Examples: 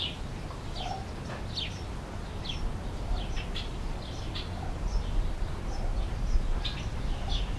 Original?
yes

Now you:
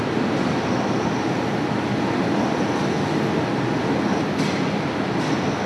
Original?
yes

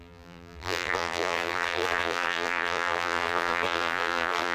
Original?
no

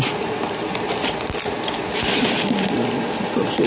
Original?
yes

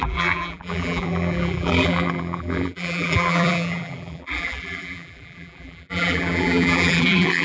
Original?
no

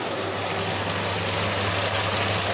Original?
yes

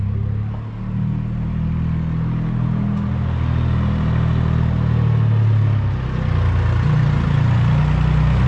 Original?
yes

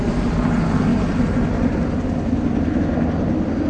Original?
yes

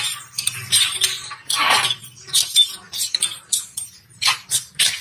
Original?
no